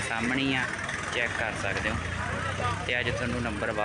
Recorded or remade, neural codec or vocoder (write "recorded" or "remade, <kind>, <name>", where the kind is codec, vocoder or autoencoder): recorded